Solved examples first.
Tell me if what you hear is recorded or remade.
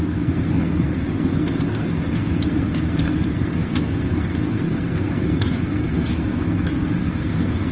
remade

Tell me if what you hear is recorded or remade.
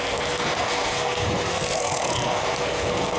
remade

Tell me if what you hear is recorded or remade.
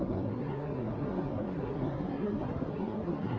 remade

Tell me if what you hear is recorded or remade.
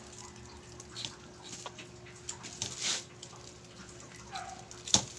recorded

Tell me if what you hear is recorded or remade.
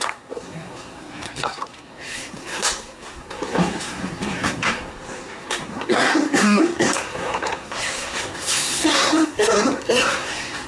remade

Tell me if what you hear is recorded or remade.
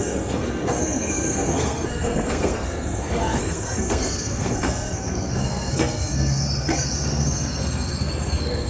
remade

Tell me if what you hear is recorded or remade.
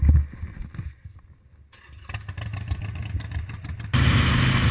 recorded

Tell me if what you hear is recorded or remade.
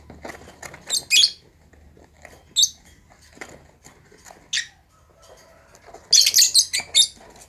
recorded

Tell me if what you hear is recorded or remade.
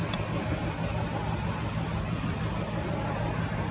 recorded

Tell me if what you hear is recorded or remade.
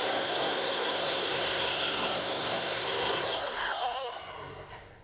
remade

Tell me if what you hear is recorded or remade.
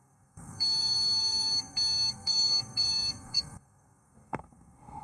remade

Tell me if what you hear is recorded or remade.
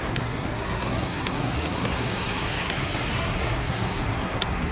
remade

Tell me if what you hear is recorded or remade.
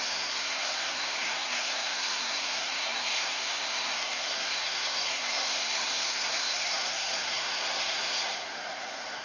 remade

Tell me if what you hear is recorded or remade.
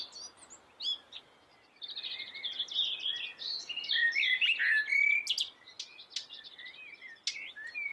recorded